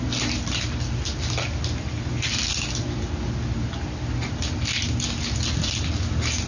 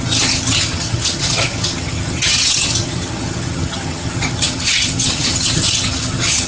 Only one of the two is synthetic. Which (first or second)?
second